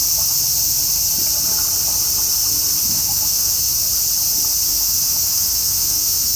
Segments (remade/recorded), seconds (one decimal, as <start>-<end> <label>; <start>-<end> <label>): 0.0-2.8 recorded; 2.8-3.8 remade; 3.8-4.7 recorded; 4.7-6.4 remade